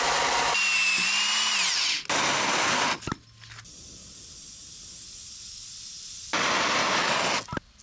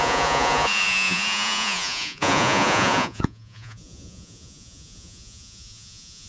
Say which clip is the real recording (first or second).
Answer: first